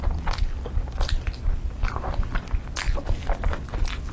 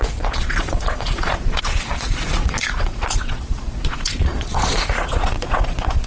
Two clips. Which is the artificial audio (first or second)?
second